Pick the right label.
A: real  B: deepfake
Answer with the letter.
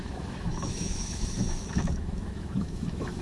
B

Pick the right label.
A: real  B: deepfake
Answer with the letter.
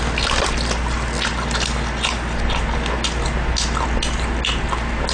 A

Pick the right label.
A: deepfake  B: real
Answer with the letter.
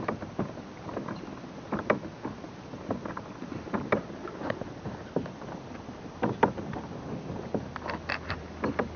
B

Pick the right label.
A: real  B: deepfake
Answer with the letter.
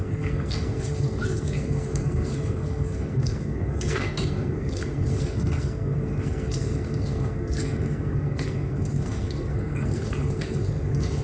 B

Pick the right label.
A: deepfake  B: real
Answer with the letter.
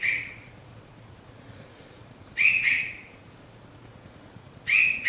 A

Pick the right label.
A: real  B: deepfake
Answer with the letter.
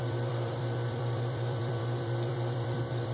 B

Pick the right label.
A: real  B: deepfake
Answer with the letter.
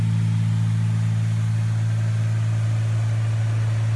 A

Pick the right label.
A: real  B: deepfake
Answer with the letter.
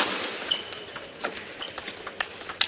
A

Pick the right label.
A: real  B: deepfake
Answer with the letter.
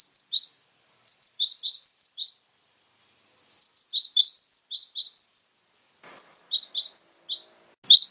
A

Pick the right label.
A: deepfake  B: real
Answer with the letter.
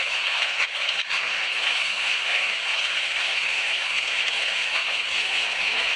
A